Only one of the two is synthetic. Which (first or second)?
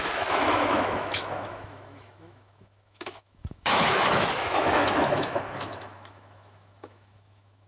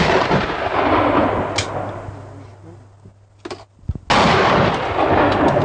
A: first